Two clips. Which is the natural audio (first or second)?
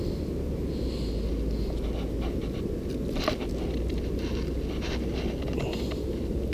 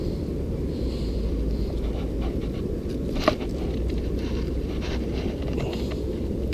first